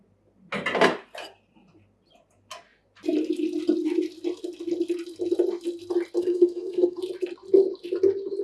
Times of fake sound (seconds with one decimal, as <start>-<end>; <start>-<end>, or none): 6.2-7.0